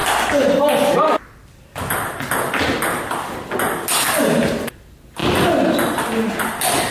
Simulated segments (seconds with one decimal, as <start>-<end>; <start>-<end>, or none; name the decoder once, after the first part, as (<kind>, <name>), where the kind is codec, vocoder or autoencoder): none